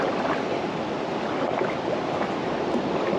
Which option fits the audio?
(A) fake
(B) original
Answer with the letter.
B